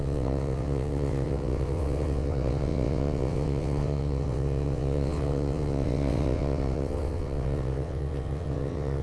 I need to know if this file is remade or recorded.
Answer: remade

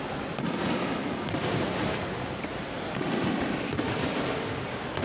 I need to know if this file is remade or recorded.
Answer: recorded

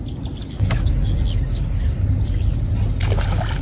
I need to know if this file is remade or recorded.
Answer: recorded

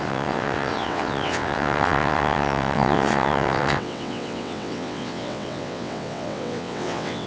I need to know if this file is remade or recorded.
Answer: remade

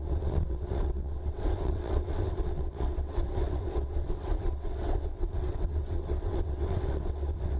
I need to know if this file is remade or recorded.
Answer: remade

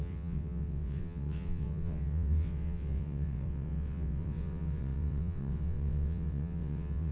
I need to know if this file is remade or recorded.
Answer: remade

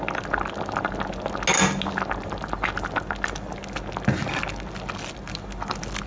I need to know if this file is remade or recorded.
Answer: recorded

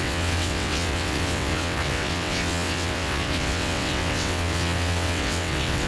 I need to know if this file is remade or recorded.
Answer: remade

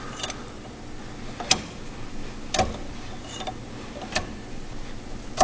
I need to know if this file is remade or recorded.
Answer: recorded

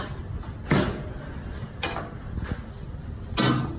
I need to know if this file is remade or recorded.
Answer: recorded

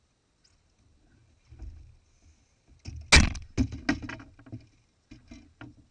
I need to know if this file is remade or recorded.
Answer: recorded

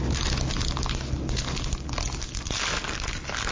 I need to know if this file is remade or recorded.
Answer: recorded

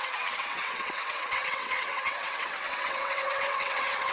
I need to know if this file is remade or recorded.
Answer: remade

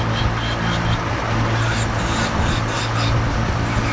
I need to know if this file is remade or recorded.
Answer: recorded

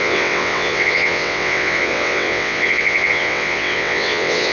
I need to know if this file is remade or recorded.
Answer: remade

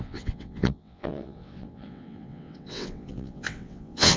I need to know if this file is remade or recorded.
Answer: remade